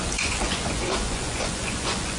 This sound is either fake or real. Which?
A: fake